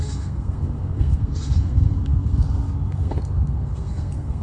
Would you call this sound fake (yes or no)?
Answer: yes